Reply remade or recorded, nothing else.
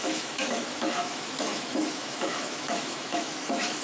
remade